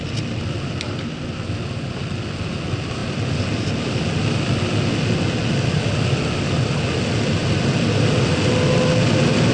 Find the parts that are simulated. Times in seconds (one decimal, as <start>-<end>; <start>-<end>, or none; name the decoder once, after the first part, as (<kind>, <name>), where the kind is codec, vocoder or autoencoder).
none